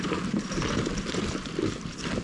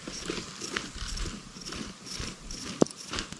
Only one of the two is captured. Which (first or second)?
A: second